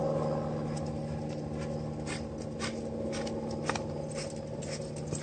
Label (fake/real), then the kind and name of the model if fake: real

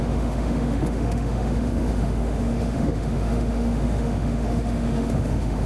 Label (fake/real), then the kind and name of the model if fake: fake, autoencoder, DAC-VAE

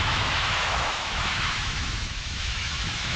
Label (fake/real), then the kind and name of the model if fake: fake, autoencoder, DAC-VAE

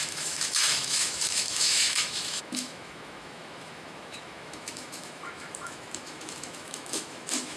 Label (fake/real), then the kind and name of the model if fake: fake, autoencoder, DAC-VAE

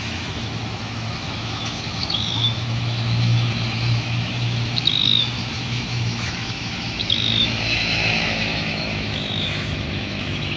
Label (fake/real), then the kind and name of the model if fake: fake, autoencoder, DAC-VAE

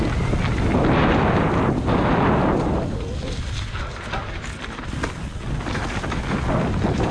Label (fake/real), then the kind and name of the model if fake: real